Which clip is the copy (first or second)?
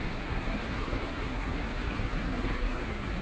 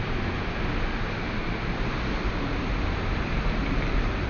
first